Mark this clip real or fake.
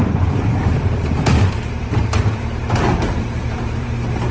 fake